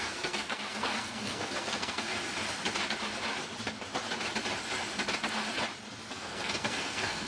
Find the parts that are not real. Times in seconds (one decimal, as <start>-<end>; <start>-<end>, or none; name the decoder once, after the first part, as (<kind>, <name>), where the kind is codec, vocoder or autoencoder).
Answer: 0.0-2.1 (codec, SNAC); 6.1-7.3